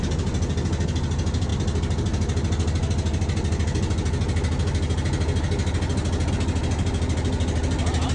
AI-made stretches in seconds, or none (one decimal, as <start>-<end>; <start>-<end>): none